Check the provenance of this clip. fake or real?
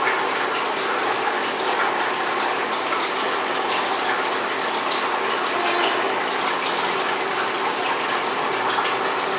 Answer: real